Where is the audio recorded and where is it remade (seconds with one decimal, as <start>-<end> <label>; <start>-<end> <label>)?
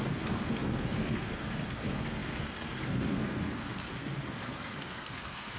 0.0-5.6 remade